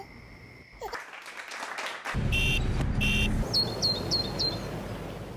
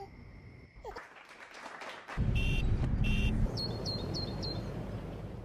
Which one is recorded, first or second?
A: first